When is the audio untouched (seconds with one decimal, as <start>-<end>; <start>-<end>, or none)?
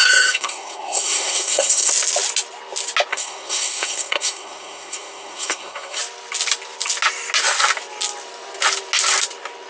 1.9-3.1; 6.0-9.7